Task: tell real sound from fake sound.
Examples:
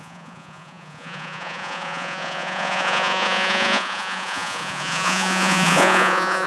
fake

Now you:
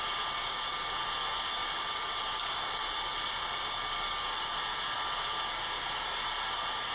real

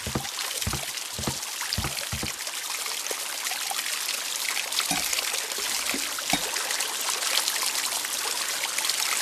real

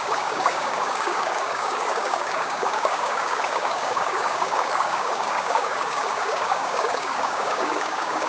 fake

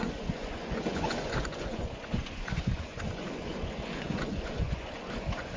fake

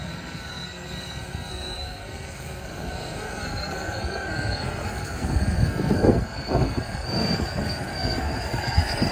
fake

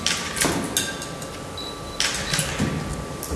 real